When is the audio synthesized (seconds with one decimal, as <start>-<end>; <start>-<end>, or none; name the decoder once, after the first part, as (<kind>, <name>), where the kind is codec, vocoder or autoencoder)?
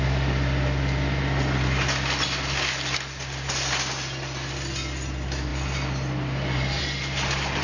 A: none